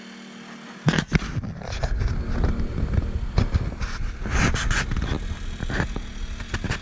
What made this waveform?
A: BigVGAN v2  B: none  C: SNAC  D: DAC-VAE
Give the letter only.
B